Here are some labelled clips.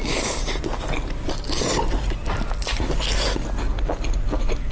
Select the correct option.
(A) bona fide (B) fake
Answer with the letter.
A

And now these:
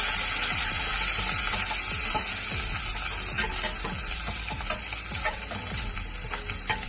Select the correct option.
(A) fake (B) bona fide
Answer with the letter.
B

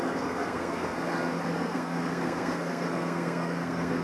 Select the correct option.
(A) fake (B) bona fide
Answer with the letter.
A